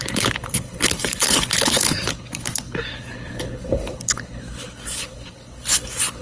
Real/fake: fake